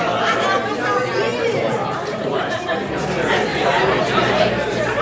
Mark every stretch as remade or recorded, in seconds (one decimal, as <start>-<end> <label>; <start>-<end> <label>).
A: 0.0-1.3 recorded; 1.3-2.9 remade; 2.9-3.5 recorded; 3.5-5.0 remade